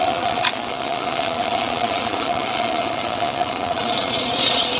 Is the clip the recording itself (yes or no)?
no